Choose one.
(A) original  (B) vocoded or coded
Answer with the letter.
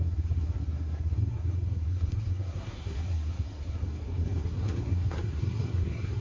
B